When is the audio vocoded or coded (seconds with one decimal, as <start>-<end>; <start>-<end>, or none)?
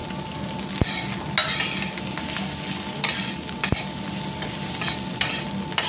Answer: 0.0-0.7